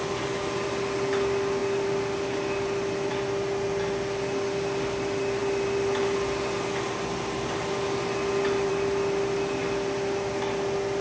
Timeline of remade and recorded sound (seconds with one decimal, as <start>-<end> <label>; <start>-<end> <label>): 0.0-11.0 recorded

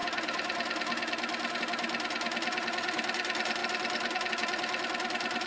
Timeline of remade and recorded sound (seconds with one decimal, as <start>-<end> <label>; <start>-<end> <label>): 0.0-5.5 recorded

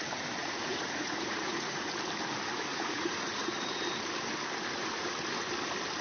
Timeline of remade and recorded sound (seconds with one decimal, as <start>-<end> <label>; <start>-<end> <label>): 0.0-0.4 recorded; 0.4-1.9 remade; 1.9-2.7 recorded; 2.7-3.8 remade; 3.8-6.0 recorded

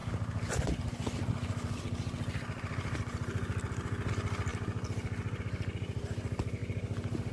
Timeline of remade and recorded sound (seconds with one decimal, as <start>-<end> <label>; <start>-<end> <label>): 0.0-7.3 recorded

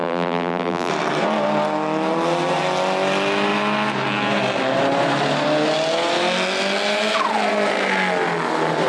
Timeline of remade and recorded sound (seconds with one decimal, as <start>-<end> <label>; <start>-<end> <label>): 0.0-0.9 remade; 0.9-8.9 recorded

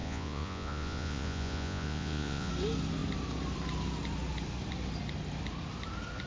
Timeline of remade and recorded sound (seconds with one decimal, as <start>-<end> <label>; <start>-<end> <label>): 0.0-2.5 remade; 2.5-6.3 recorded

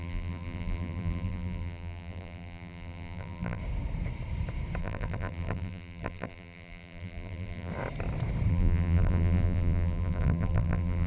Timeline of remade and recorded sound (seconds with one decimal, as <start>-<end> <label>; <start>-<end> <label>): 0.0-3.6 remade; 3.6-4.8 recorded; 4.8-7.7 remade; 7.7-8.5 recorded; 8.5-11.1 remade